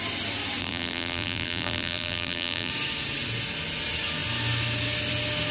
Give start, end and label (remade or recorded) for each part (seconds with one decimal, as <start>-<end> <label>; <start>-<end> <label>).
0.0-0.6 recorded; 0.6-2.7 remade; 2.7-5.5 recorded